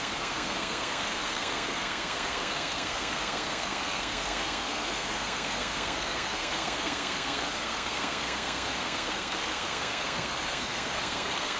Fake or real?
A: fake